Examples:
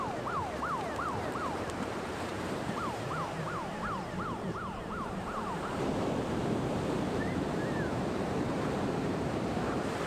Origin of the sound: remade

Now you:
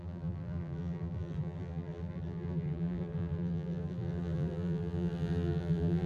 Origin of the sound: remade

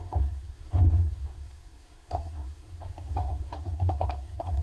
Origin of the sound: remade